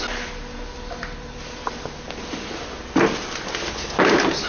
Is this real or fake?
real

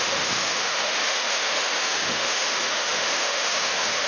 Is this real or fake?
fake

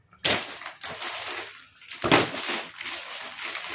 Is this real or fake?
real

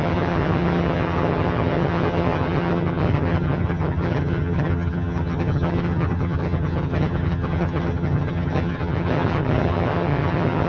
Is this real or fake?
fake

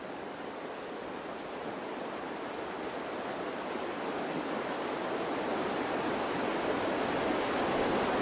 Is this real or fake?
real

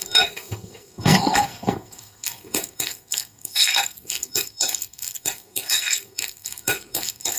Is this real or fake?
fake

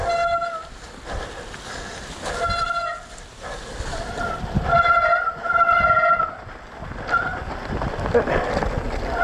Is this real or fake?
real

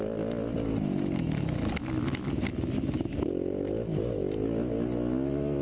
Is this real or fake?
real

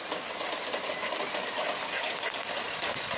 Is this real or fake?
real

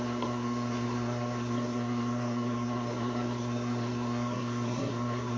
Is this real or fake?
fake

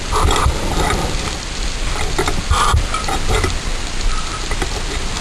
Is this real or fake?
real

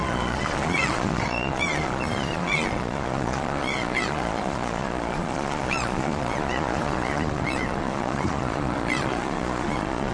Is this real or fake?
fake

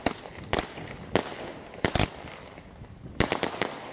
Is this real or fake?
real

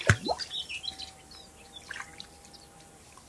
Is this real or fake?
real